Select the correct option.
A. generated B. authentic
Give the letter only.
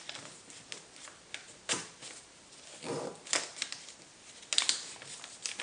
B